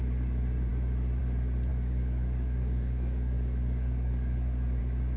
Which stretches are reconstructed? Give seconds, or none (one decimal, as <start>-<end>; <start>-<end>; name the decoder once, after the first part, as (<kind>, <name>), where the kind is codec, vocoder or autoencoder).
1.7-4.8 (codec, DAC)